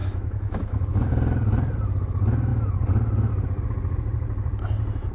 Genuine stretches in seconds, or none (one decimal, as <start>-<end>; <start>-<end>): 1.1-5.1